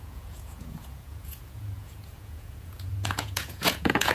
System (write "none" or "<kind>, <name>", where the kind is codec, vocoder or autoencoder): vocoder, Vocos